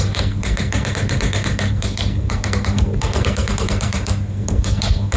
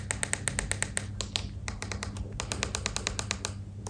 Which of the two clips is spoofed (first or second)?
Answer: first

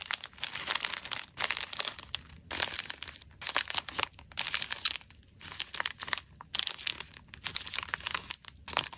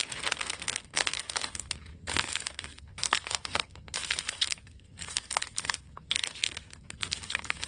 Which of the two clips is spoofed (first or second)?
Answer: second